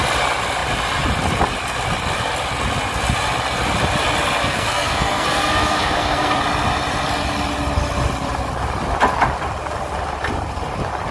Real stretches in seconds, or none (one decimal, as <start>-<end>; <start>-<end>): 0.0-4.4; 6.4-11.1

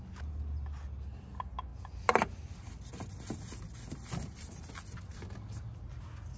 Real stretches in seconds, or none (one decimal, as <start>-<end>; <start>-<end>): 0.0-6.4

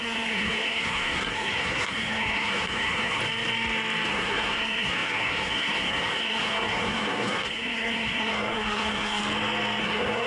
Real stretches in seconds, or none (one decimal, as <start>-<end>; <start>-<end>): 3.2-4.1; 9.2-9.8

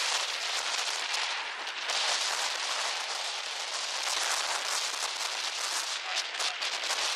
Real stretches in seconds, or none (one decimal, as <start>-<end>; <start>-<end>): 0.0-5.9; 6.4-7.2

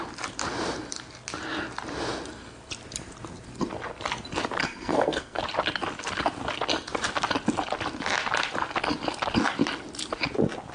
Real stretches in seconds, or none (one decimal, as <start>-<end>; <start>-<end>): 0.0-4.6; 5.4-10.7

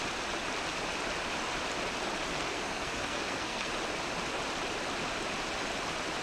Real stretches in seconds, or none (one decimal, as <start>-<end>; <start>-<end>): 0.0-2.3; 3.7-6.2

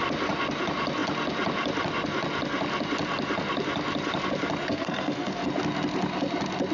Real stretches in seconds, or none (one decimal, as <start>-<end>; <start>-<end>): 0.0-4.7; 5.5-6.7